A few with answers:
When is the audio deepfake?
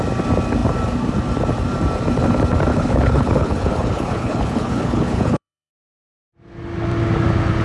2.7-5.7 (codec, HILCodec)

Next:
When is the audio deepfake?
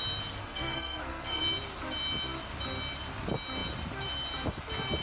0.4-1.4 (codec, SNAC)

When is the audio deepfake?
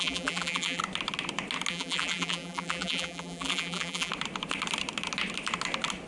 0.0-0.8 (vocoder, BigVGAN v2); 1.7-4.1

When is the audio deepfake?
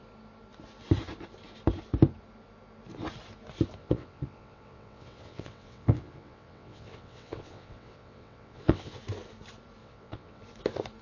3.8-9.0 (vocoder, WaveNeXt); 9.8-10.4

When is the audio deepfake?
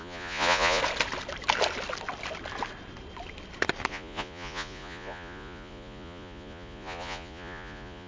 0.0-0.8 (vocoder, Vocos); 3.9-8.1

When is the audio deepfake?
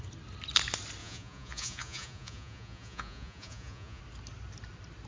1.0-4.0 (vocoder, Vocos)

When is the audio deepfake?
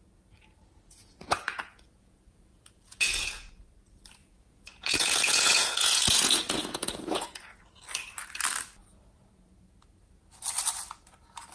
1.0-3.5 (vocoder, Vocos); 4.2-7.6